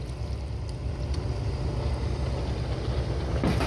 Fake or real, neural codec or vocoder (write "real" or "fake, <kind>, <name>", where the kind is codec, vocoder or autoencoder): real